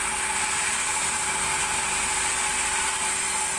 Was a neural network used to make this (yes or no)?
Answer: no